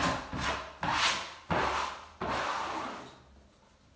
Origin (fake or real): real